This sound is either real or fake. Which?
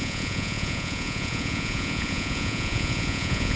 fake